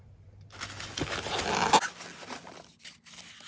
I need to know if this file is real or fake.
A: real